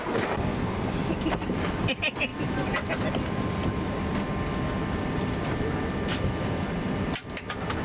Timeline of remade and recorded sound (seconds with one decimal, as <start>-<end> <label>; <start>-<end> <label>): 0.0-7.8 recorded